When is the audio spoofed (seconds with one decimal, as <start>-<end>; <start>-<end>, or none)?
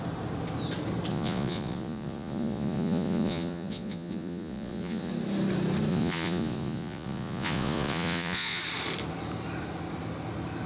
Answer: 1.1-5.1; 5.9-8.6